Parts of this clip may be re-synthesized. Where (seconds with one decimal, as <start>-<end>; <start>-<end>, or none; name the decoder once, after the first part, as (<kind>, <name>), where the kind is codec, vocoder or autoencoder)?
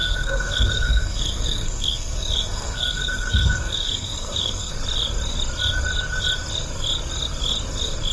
0.0-4.7 (codec, SNAC)